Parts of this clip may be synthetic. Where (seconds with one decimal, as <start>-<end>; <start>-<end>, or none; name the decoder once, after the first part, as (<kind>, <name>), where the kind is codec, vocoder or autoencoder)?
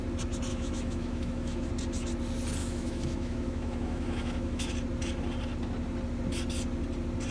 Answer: 0.5-1.7 (autoencoder, DAC-VAE); 2.6-4.7